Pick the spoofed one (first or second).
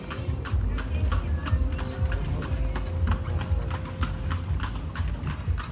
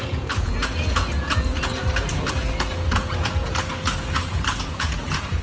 second